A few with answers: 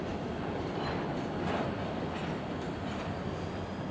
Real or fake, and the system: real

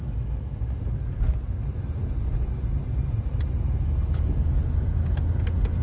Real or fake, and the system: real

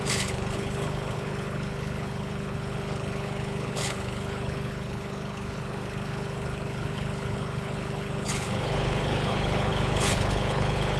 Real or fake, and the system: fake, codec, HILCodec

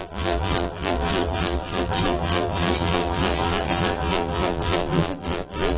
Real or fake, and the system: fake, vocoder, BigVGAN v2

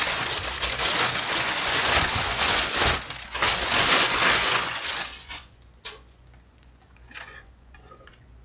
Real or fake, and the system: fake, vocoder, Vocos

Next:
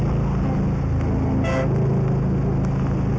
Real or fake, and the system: real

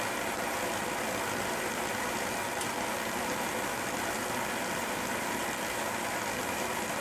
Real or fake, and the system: real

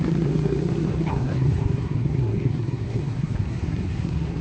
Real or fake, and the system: fake, codec, SNAC